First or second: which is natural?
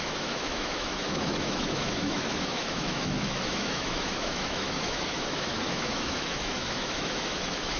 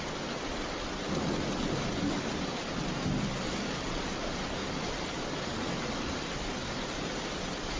second